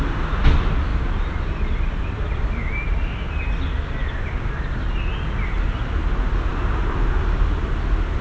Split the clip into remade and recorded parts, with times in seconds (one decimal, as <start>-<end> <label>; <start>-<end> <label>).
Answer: 0.0-8.2 recorded